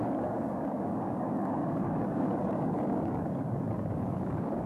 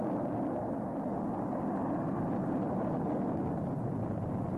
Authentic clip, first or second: second